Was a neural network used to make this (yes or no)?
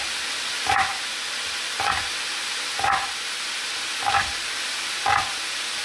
no